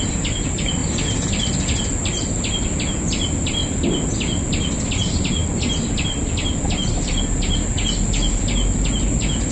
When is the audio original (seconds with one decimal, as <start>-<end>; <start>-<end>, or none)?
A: 0.0-9.5